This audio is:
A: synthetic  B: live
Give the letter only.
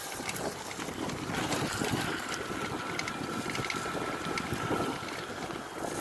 B